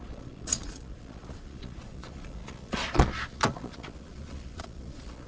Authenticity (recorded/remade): remade